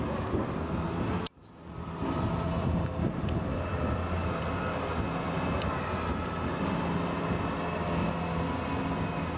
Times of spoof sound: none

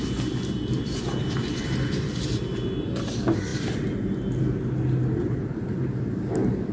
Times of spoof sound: 0.0-2.1 (vocoder, BigVGAN v2); 5.5-6.0

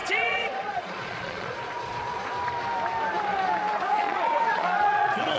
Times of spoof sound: 0.0-2.3 (vocoder, Vocos); 3.9-5.4

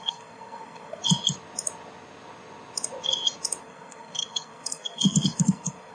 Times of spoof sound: 0.0-1.0 (codec, SNAC); 3.6-5.9

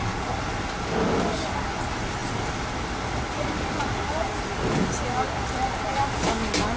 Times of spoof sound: none